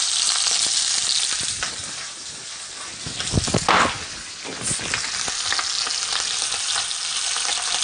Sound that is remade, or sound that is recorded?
recorded